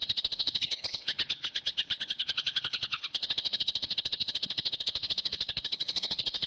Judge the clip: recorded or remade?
remade